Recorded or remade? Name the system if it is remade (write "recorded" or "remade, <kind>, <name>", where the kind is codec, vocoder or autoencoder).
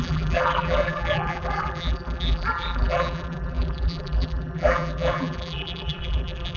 remade, vocoder, BigVGAN v2